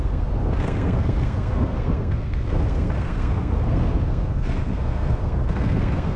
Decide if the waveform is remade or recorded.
remade